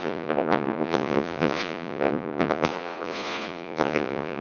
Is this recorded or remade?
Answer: remade